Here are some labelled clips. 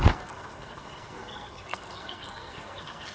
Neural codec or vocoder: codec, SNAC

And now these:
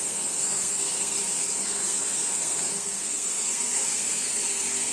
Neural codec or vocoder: codec, SNAC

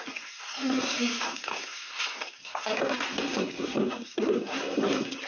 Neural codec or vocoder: codec, SNAC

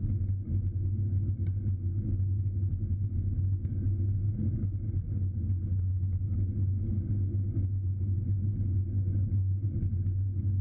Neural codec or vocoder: none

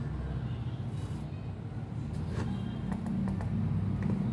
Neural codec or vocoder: none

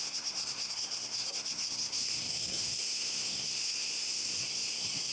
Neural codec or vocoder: codec, SNAC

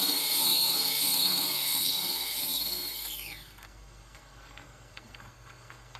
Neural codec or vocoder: codec, SNAC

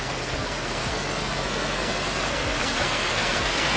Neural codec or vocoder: codec, SNAC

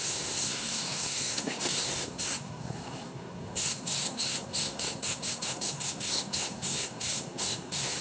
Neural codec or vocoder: codec, SNAC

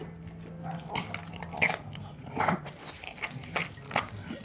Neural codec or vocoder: none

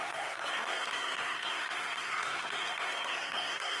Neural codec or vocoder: codec, SNAC